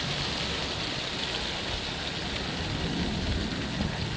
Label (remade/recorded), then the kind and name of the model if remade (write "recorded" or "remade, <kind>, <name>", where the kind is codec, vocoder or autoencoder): recorded